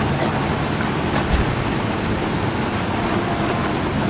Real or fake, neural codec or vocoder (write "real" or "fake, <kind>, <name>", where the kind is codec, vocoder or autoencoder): real